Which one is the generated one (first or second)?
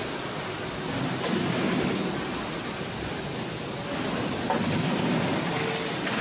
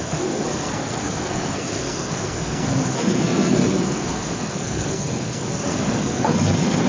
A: second